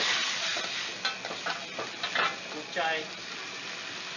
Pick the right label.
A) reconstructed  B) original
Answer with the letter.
B